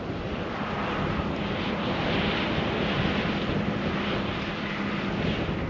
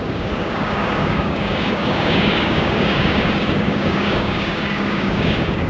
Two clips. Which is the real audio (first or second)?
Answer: first